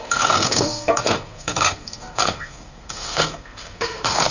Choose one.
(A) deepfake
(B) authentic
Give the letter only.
A